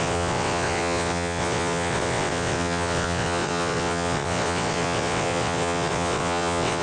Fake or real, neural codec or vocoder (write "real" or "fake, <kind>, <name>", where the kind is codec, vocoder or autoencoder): fake, vocoder, WaveNeXt